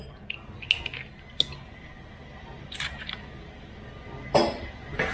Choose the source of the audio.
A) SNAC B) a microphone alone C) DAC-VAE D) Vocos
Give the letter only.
B